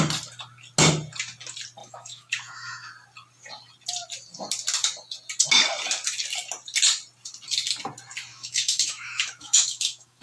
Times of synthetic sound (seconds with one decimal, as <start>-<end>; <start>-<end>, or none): 1.8-2.9; 8.3-10.2